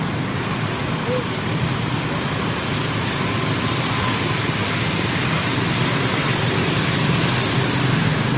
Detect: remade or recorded recorded